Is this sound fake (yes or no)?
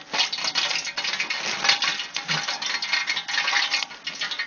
no